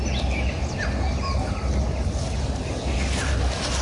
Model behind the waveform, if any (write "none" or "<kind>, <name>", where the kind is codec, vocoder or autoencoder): none